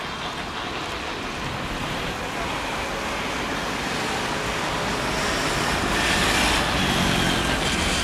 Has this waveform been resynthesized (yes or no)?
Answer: no